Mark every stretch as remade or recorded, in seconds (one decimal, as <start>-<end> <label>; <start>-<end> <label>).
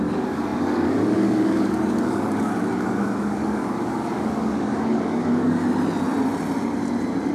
0.0-5.6 remade; 5.6-7.3 recorded